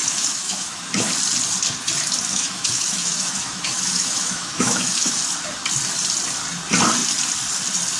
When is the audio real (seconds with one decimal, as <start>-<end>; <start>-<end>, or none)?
1.1-2.3; 5.2-8.0